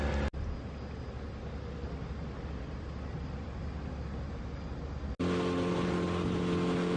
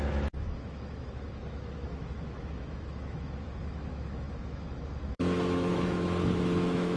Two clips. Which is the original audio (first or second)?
first